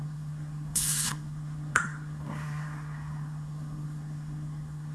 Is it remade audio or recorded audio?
remade